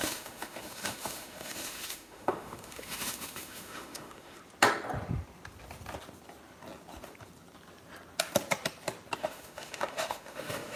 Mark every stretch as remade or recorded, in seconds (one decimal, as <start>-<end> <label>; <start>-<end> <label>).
0.0-4.4 remade; 4.4-9.2 recorded; 9.2-10.8 remade